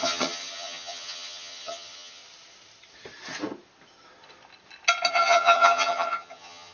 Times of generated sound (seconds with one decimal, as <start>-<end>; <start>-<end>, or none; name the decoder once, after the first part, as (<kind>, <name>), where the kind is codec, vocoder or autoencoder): 0.0-2.2 (vocoder, HiFi-GAN); 5.1-6.7